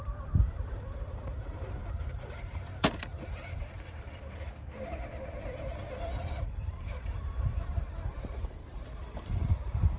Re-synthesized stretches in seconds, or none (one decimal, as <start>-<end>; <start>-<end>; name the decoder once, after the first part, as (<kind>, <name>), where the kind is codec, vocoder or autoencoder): 0.0-10.0 (vocoder, BigVGAN v2)